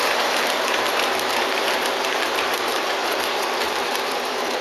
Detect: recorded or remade remade